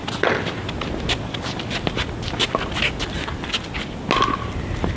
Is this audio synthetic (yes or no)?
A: no